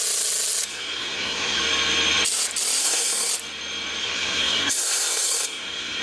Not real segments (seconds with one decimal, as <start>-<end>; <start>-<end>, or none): 0.7-1.6; 2.8-3.3; 4.0-6.0